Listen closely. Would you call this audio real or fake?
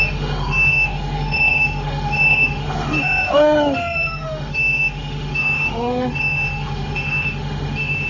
fake